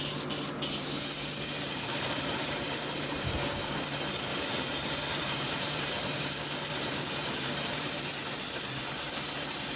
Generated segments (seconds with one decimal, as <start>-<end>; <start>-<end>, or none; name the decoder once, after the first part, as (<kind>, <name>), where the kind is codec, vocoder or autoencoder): 1.9-2.8 (vocoder, BigVGAN v2); 4.3-6.3; 6.7-7.9